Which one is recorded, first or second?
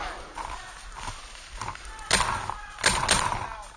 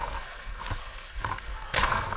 first